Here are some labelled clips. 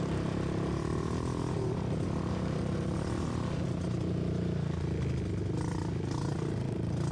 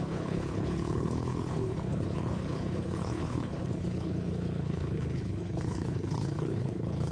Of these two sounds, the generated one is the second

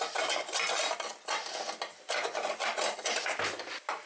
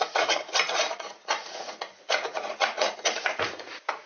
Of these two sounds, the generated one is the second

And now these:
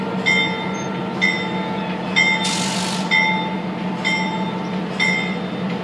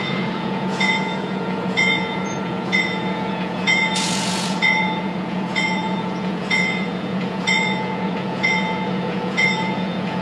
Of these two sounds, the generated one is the second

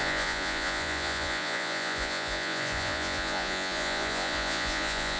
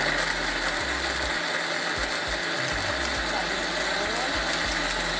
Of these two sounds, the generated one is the first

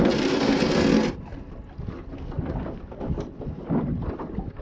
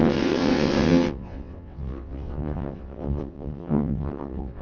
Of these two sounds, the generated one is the second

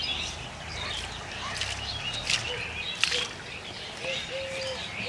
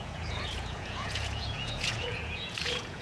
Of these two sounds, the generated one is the second